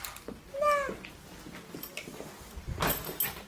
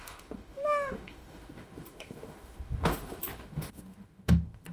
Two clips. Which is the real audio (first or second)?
first